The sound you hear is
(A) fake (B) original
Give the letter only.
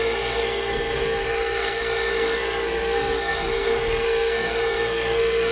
A